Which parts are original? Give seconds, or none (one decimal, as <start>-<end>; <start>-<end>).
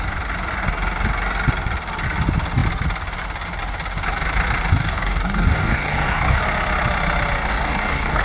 0.0-4.8; 6.4-7.5